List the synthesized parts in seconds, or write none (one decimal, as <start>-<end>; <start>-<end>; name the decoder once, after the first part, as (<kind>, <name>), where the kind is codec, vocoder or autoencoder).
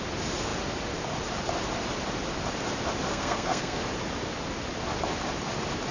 3.1-3.8 (codec, SNAC)